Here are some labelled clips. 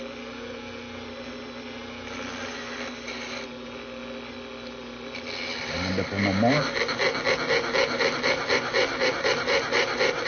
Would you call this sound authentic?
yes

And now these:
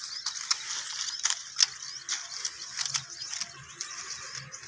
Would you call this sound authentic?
yes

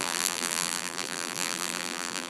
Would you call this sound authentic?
no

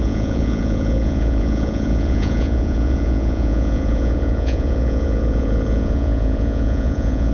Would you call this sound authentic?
no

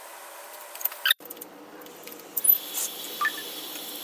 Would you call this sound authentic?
no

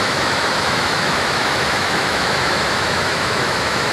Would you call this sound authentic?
no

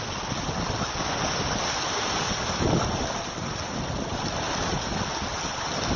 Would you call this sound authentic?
yes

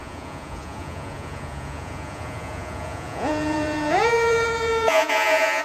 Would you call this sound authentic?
no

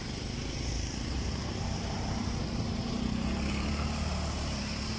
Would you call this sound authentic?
yes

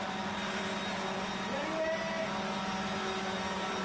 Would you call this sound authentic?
yes